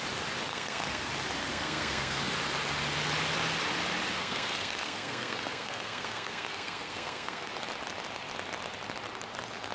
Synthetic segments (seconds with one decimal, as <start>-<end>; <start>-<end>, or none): 0.5-1.1; 1.5-2.2; 4.2-7.5